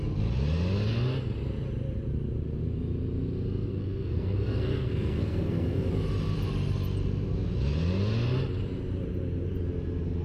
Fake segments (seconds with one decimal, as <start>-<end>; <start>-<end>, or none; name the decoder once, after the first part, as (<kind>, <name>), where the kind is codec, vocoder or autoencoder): 3.7-5.9 (codec, SNAC)